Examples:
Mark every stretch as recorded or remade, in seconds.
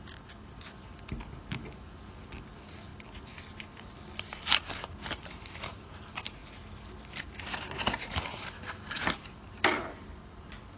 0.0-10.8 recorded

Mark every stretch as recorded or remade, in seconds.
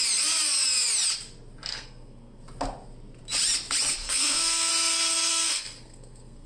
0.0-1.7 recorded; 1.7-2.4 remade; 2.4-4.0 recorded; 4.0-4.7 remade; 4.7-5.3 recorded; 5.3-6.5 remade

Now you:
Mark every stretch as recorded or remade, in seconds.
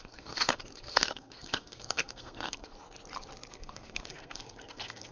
0.0-2.7 remade; 2.7-3.5 recorded; 3.5-5.1 remade